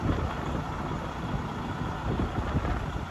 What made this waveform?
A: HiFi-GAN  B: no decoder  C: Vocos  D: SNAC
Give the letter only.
B